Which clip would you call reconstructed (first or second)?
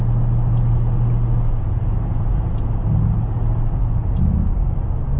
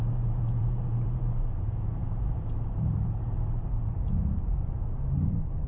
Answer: second